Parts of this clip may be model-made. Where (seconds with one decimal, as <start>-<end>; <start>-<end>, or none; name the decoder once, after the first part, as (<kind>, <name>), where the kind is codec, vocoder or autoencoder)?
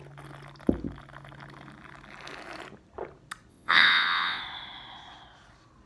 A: 3.5-4.4 (vocoder, WaveNeXt)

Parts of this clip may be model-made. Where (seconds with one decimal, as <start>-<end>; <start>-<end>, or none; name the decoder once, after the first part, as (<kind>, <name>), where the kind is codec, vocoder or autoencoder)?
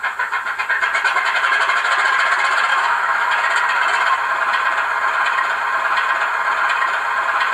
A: 2.7-3.3 (autoencoder, DAC-VAE)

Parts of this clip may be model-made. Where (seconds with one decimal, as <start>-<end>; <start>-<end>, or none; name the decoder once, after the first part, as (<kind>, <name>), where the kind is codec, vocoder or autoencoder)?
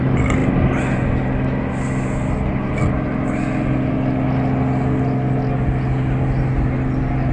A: none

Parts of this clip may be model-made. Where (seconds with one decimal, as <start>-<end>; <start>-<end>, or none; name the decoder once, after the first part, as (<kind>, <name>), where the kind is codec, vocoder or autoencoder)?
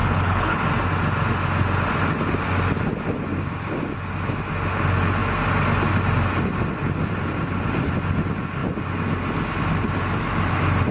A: 0.0-0.6 (codec, HILCodec)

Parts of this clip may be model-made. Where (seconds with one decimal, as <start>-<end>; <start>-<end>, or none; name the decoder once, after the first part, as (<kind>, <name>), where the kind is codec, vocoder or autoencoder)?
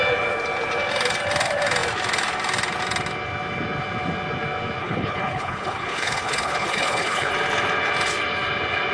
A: 4.8-7.3 (codec, HILCodec)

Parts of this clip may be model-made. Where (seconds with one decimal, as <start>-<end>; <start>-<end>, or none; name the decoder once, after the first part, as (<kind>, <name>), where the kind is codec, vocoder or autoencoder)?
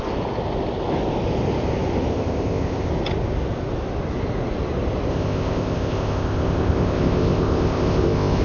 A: 2.1-2.9 (codec, ZipCodec); 5.1-8.4